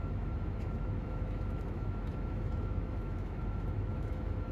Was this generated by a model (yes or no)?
yes